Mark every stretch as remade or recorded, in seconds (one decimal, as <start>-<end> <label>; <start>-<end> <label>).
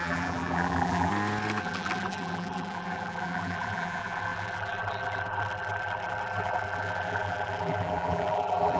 0.0-1.1 remade; 1.1-1.6 recorded; 1.6-8.8 remade